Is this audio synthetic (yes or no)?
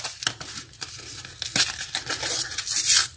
no